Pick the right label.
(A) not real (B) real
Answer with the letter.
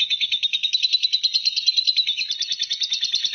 B